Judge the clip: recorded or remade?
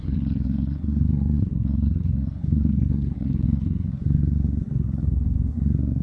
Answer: remade